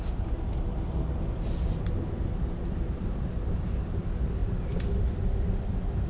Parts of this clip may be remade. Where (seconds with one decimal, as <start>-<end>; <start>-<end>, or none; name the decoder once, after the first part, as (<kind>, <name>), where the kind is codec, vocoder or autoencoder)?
none

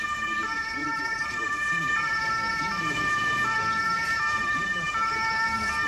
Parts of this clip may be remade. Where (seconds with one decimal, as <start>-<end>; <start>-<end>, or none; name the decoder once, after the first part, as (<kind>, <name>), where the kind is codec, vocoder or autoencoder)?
0.0-5.9 (vocoder, BigVGAN v2)

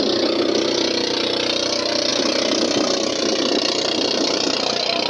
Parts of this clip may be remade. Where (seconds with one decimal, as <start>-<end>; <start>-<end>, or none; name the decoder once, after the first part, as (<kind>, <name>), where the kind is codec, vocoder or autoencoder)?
0.0-2.1 (vocoder, BigVGAN v2); 3.1-5.1